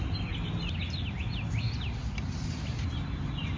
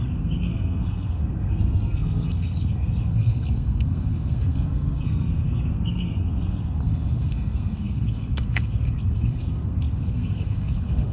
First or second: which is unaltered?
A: first